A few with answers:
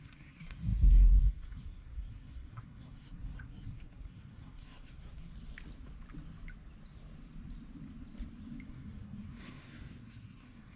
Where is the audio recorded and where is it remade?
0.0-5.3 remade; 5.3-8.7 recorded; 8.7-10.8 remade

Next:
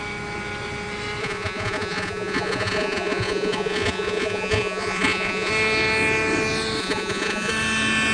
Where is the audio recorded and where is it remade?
0.0-1.2 recorded; 1.2-5.5 remade; 5.5-6.8 recorded; 6.8-7.5 remade; 7.5-8.1 recorded

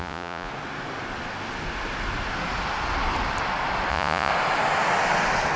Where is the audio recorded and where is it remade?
0.0-0.5 remade; 0.5-3.9 recorded; 3.9-4.3 remade; 4.3-5.6 recorded

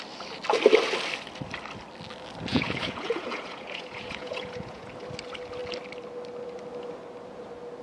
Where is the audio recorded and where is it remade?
0.0-2.5 recorded; 2.5-4.9 remade; 4.9-7.8 recorded

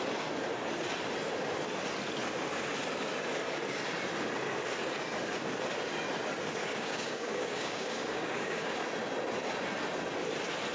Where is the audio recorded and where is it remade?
0.0-6.6 recorded; 6.6-8.7 remade; 8.7-10.7 recorded

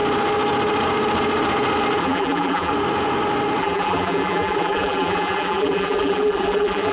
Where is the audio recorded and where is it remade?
0.0-2.0 recorded; 2.0-2.7 remade; 2.7-3.6 recorded; 3.6-6.9 remade